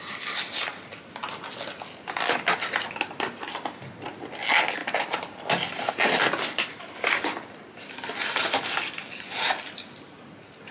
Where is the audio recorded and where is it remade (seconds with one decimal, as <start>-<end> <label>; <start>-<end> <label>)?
0.0-10.7 recorded